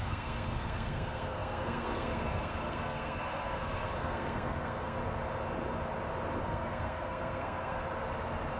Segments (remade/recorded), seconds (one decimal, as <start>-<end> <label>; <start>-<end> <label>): 0.0-5.0 remade; 5.0-6.4 recorded; 6.4-7.8 remade; 7.8-8.6 recorded